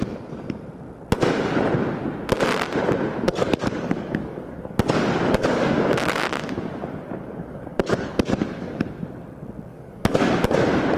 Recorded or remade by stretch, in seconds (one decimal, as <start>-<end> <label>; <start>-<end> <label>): 0.0-3.3 recorded; 3.3-8.1 remade; 8.1-9.7 recorded; 9.7-10.3 remade; 10.3-11.0 recorded